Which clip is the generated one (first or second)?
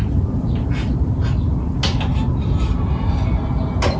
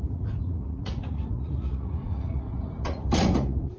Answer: second